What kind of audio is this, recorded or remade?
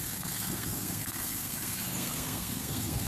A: remade